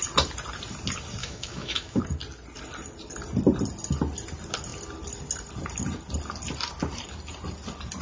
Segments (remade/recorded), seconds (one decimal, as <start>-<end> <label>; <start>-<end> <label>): 0.0-1.2 recorded; 1.2-2.0 remade; 2.0-8.0 recorded